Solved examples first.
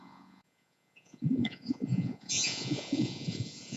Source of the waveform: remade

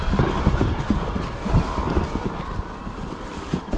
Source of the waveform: recorded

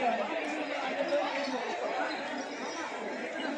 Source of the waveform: recorded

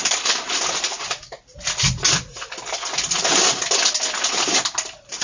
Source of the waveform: recorded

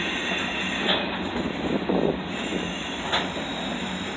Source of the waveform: recorded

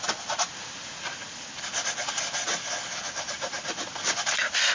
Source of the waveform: recorded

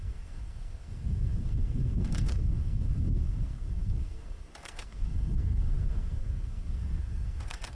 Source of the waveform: remade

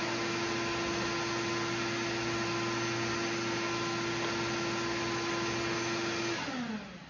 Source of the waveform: recorded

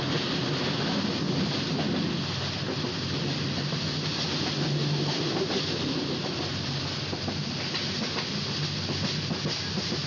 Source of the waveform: recorded